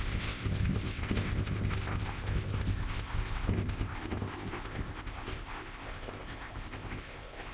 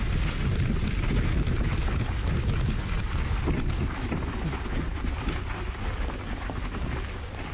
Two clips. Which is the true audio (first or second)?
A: second